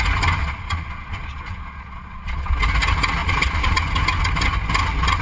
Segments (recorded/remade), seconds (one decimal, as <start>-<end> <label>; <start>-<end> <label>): 0.0-0.4 recorded; 0.4-2.6 remade; 2.6-3.2 recorded; 3.2-3.8 remade; 3.8-5.2 recorded